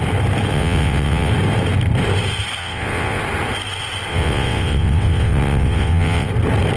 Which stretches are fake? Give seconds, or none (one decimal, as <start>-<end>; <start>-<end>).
0.5-1.3; 2.6-3.2; 4.1-6.3